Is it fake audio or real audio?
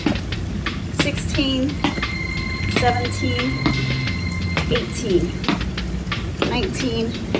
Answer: real